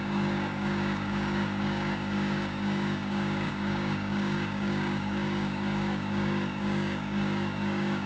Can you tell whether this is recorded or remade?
remade